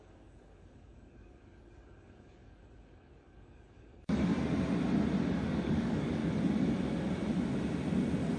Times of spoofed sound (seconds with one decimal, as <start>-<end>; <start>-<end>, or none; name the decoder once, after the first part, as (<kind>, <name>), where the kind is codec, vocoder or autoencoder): 0.0-4.3 (codec, DAC); 5.4-6.2